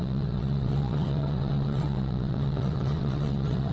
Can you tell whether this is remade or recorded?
remade